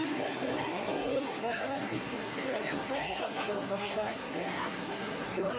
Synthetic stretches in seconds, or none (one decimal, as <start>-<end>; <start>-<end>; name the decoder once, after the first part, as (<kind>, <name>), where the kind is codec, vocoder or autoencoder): 0.0-5.6 (codec, SNAC)